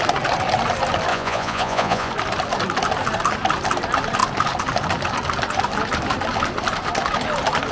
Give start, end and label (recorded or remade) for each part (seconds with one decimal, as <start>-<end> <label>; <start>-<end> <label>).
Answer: 0.0-1.1 recorded; 1.1-2.1 remade; 2.1-7.7 recorded